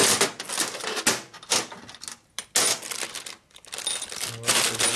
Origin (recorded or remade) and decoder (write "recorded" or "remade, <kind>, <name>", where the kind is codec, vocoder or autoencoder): recorded